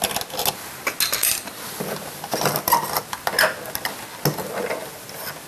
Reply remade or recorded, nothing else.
recorded